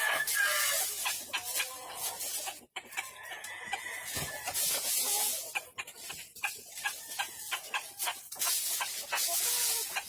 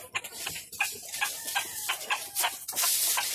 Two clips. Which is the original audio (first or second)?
second